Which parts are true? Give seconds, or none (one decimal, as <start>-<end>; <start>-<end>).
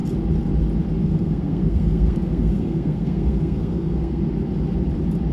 0.0-1.0; 4.2-5.3